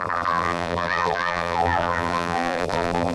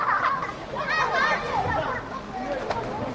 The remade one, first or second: first